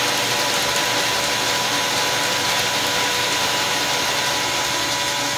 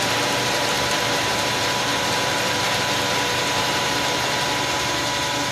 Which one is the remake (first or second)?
second